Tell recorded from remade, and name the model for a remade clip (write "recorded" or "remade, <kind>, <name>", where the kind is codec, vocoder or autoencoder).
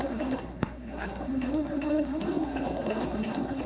remade, codec, SNAC